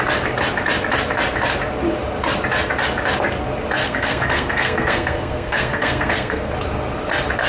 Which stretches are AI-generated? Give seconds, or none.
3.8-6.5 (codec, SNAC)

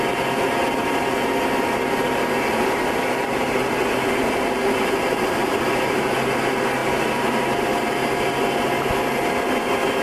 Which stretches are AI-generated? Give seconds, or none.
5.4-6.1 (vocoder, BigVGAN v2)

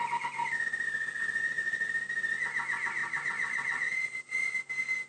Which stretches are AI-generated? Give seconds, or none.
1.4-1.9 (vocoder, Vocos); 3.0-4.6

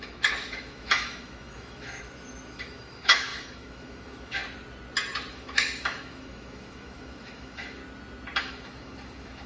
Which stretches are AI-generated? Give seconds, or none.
0.0-4.4 (autoencoder, DAC-VAE); 5.3-7.8; 8.4-9.5

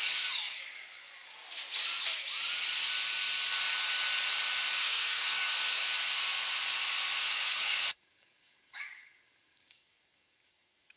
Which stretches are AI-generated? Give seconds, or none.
0.0-1.4 (codec, DAC); 4.8-5.8; 7.3-11.0